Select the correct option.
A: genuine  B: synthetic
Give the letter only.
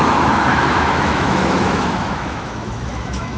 B